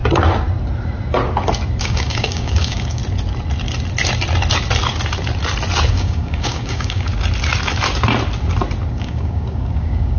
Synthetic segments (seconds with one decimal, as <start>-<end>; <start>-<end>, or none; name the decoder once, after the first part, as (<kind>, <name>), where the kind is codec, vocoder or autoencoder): 1.8-3.0 (codec, DAC); 5.9-7.1; 8.9-10.2